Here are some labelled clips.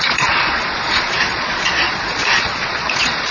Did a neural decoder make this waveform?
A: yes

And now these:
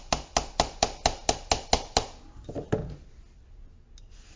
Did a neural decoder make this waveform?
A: no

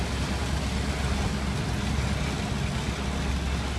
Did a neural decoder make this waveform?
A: no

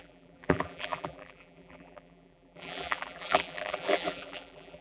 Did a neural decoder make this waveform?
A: yes